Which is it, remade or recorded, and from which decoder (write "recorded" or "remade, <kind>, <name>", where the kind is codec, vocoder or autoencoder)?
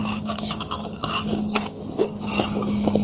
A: remade, codec, DAC